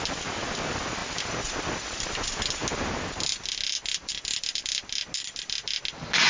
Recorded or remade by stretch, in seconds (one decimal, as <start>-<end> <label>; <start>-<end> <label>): 0.0-6.3 recorded